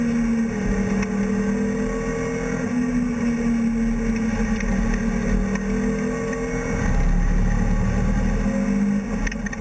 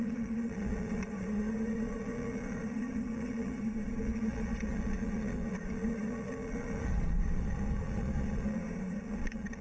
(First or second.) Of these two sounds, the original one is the first